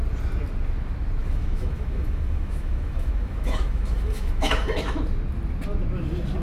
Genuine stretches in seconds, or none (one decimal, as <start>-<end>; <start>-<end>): 0.0-1.2; 5.0-6.4